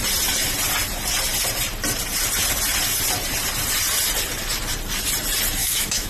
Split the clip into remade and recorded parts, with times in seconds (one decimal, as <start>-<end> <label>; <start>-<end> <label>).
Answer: 0.0-5.6 recorded; 5.6-6.1 remade